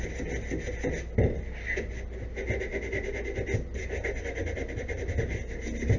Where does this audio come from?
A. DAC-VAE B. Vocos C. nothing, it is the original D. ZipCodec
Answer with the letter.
C